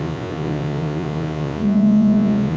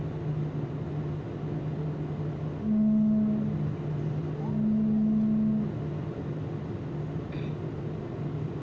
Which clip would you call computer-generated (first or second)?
first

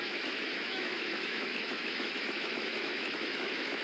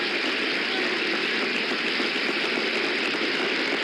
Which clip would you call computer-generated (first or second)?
first